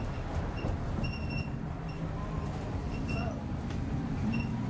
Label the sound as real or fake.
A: fake